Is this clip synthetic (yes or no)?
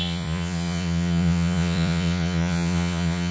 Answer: yes